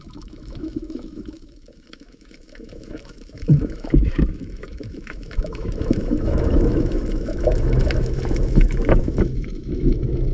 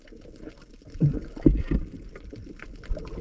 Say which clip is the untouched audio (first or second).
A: second